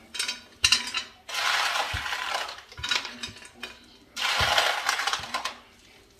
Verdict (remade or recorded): recorded